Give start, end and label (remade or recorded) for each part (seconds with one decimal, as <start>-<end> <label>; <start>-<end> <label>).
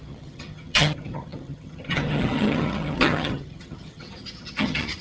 0.0-5.0 remade